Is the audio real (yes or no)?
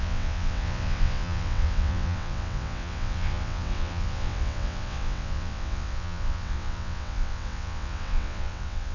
no